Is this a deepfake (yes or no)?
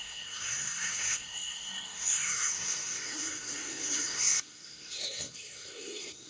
yes